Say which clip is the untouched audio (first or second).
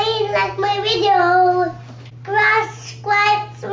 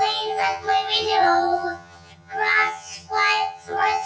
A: first